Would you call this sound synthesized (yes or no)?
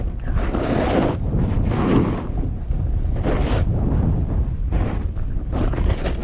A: no